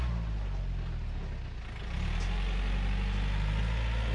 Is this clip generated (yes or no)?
no